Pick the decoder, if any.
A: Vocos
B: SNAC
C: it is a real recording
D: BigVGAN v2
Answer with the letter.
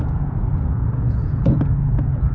A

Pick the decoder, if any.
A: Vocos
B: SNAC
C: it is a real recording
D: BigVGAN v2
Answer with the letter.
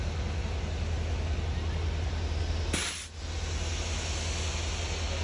C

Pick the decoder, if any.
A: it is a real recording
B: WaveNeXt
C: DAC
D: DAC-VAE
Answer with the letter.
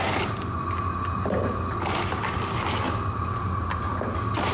A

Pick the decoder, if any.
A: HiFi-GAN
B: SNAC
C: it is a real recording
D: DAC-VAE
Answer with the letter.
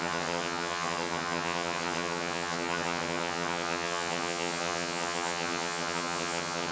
A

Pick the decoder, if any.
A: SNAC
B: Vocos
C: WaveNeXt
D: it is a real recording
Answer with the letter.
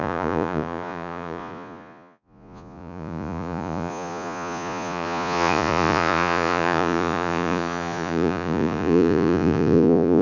B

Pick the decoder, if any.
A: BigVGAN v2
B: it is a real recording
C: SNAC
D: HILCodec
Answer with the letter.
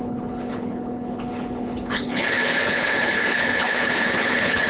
D